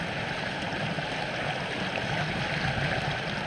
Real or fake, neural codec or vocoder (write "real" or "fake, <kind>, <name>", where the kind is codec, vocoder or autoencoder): real